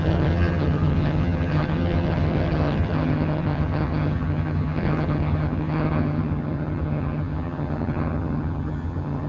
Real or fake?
fake